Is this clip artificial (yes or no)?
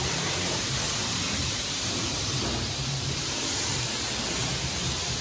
yes